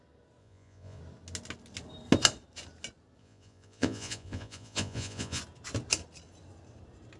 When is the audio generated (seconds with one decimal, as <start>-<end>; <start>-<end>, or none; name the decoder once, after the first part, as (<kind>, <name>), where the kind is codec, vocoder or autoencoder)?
0.4-1.0 (vocoder, Vocos); 3.2-5.4